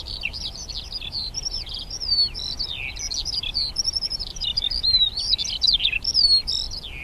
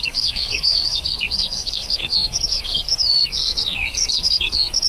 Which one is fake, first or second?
second